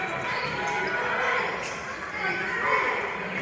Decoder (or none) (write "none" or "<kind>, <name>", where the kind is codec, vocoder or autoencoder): none